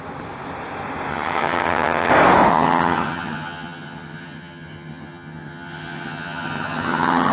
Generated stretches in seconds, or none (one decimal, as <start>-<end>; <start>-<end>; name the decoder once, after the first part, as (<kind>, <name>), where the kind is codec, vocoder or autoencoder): 1.1-2.1 (vocoder, HiFi-GAN); 2.5-7.3